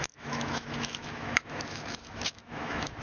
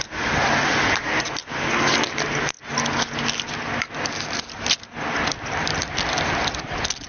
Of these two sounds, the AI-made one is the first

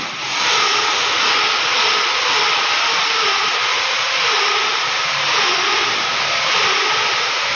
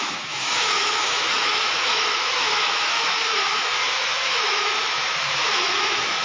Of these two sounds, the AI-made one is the second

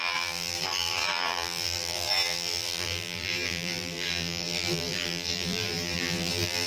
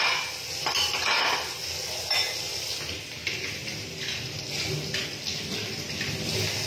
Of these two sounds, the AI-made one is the first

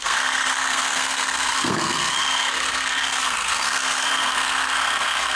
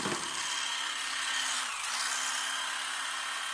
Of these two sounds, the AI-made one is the first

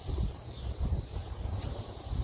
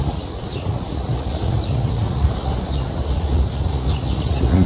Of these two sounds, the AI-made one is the second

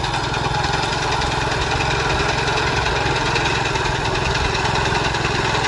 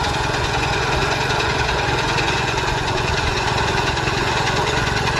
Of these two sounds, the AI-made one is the second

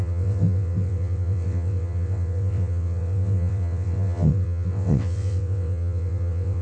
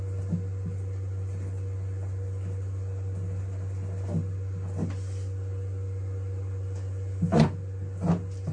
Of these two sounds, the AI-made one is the first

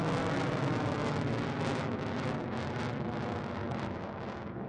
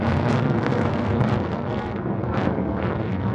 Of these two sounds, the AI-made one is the second